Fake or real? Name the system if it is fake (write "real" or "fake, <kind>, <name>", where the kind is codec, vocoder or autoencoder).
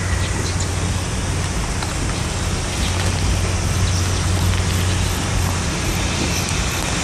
real